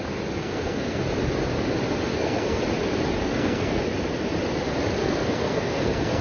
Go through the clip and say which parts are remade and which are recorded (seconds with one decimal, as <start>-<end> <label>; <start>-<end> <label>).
0.0-0.4 recorded; 0.4-1.0 remade; 1.0-2.1 recorded; 2.1-2.6 remade; 2.6-3.2 recorded; 3.2-3.8 remade; 3.8-5.0 recorded; 5.0-6.2 remade